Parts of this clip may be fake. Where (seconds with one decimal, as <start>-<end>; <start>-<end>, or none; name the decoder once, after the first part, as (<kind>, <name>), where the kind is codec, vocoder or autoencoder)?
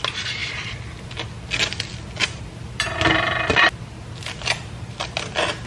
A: 0.4-1.1 (vocoder, BigVGAN v2)